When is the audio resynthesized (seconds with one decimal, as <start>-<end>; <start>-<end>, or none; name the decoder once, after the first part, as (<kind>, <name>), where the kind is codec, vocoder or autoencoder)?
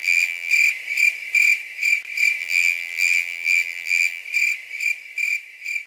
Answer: 0.0-0.5 (vocoder, BigVGAN v2); 2.4-4.2